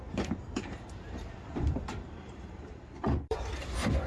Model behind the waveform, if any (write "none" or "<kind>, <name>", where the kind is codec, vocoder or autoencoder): vocoder, BigVGAN v2